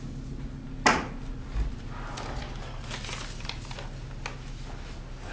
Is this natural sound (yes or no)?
yes